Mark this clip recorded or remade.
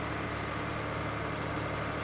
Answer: recorded